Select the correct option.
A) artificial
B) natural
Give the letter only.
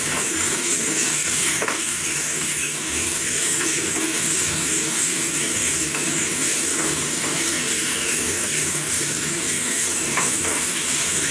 A